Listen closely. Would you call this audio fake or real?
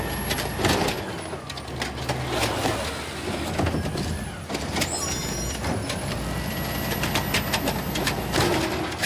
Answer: real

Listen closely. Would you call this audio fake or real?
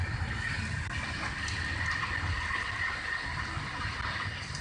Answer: real